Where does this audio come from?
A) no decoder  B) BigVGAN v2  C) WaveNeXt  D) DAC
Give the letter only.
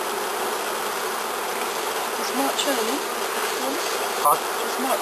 A